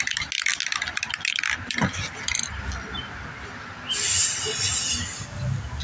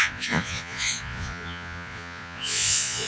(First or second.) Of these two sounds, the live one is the first